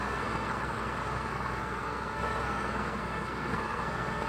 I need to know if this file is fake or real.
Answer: fake